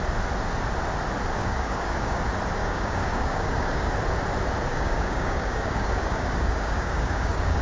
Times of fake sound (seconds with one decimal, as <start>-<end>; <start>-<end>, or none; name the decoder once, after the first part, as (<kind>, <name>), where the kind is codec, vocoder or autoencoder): 1.4-2.2 (codec, DAC); 2.6-3.9; 4.7-7.6